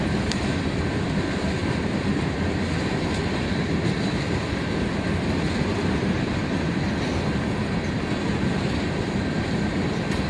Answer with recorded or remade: recorded